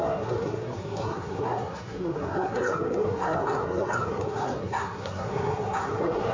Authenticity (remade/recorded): remade